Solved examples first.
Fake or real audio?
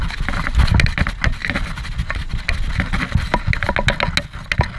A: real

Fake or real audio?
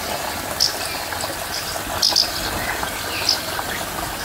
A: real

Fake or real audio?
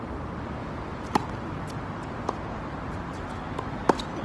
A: fake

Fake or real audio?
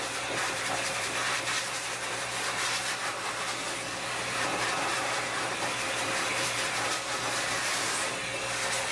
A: fake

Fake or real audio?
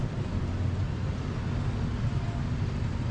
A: real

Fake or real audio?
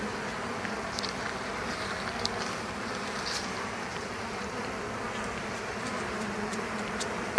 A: fake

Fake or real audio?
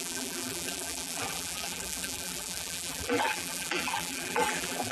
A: fake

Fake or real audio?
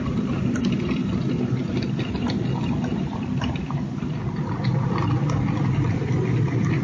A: fake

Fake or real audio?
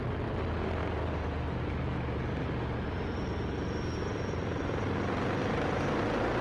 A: real